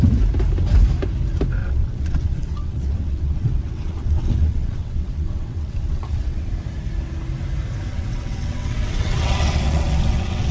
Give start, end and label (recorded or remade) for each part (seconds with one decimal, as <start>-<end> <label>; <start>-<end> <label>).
0.0-1.6 recorded; 1.6-6.5 remade; 6.5-7.9 recorded; 7.9-10.5 remade